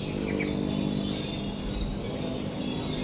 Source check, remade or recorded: recorded